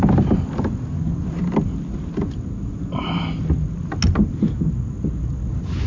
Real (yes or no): yes